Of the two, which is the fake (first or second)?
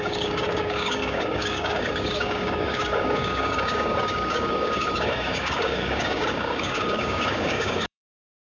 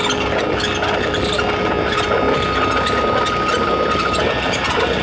first